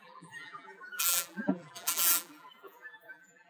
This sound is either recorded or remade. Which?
remade